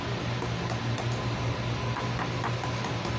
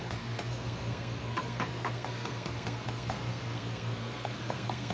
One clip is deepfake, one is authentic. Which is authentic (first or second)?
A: first